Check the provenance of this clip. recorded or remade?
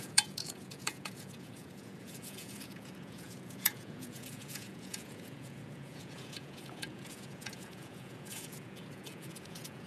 remade